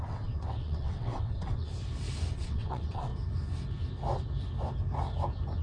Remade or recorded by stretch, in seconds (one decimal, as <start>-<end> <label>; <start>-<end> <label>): 0.0-1.7 remade; 1.7-2.3 recorded; 2.3-3.1 remade; 3.1-5.6 recorded